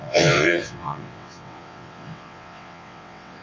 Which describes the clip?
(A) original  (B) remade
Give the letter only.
B